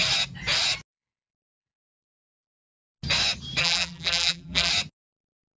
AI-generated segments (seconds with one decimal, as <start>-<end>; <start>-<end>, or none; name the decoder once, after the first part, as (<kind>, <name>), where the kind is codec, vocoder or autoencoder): 3.6-4.7 (vocoder, BigVGAN v2)